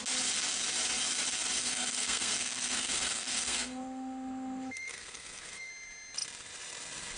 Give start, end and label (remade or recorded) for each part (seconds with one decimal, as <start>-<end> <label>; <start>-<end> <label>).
0.0-1.6 recorded; 1.6-5.7 remade; 5.7-7.2 recorded